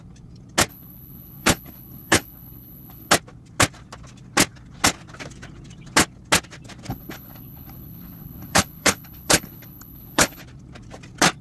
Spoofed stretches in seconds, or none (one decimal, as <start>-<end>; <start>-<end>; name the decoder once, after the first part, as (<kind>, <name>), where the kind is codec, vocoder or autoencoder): 0.7-3.1 (codec, HILCodec); 6.9-10.4